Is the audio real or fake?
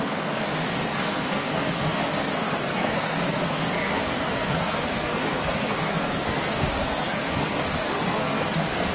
fake